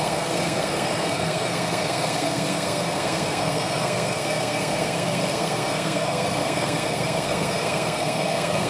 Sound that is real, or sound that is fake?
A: fake